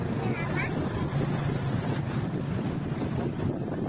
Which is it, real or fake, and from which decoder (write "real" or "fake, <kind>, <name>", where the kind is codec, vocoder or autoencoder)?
real